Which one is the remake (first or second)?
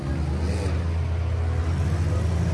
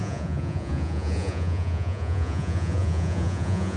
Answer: second